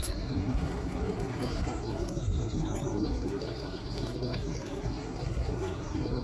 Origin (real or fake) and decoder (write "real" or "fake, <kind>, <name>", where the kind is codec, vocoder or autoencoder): fake, codec, SNAC